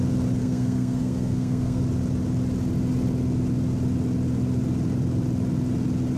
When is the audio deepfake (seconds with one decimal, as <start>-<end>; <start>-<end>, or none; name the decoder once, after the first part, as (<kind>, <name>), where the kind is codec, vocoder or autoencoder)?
0.4-1.8 (codec, SNAC)